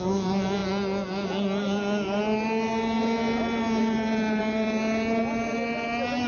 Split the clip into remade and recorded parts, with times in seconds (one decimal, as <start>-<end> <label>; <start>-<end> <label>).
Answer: 0.0-6.3 recorded